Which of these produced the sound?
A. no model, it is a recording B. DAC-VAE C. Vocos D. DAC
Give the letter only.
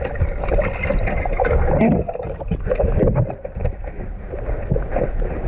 A